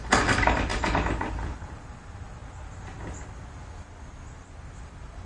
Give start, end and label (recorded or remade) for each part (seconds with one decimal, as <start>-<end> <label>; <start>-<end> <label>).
0.0-0.7 remade; 0.7-1.3 recorded; 1.3-2.4 remade; 2.4-4.8 recorded; 4.8-5.3 remade